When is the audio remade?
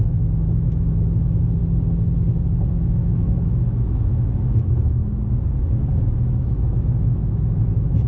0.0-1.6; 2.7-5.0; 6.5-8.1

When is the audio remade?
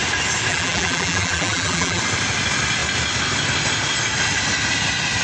0.5-2.0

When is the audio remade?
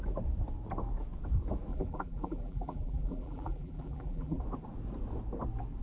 1.7-4.4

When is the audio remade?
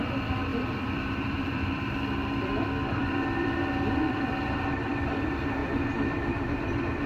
0.0-5.6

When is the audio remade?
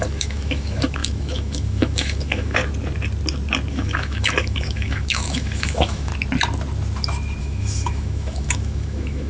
0.0-2.6; 3.7-6.1; 7.4-9.3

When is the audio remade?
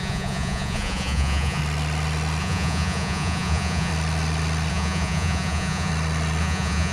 0.0-1.6; 2.4-3.9; 4.7-5.9; 6.4-6.9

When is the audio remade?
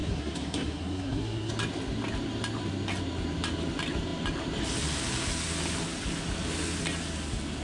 0.0-1.5